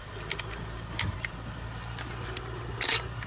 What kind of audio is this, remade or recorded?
recorded